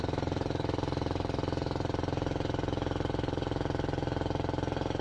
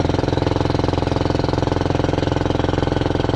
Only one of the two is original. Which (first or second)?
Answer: second